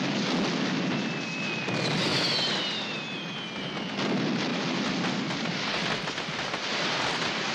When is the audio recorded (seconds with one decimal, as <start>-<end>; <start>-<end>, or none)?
0.0-7.5